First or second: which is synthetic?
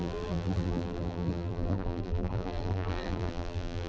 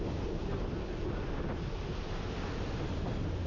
first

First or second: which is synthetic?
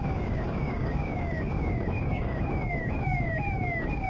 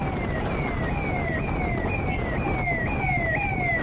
first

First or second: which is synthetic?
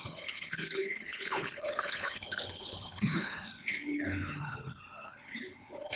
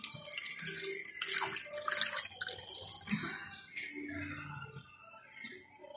first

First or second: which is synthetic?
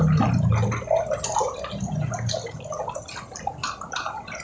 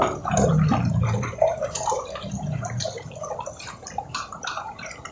second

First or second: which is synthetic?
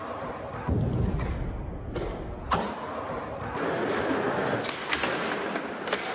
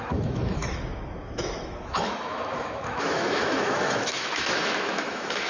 second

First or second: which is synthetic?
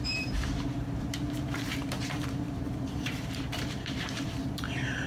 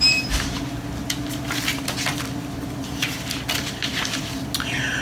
first